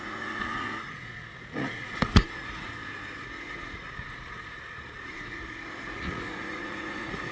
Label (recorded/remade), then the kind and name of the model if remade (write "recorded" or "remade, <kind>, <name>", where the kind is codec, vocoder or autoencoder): remade, vocoder, Vocos